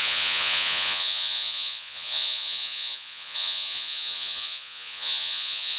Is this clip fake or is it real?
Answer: fake